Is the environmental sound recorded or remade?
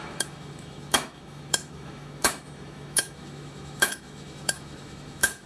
remade